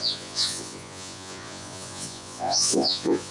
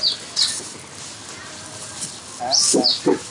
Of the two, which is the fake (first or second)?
first